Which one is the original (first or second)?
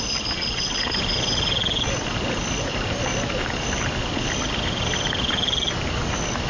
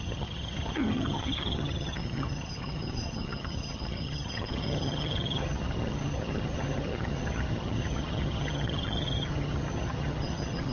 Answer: first